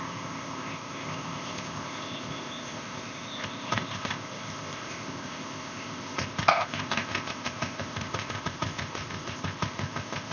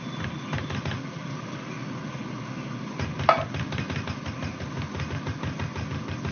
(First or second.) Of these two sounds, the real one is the second